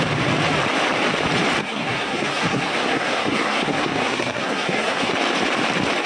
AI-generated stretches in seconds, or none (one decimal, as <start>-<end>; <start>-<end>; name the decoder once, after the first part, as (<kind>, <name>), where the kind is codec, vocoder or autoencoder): 1.6-5.1 (codec, SNAC)